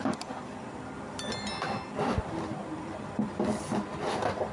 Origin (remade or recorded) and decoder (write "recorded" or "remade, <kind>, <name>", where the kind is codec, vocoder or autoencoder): remade, vocoder, BigVGAN v2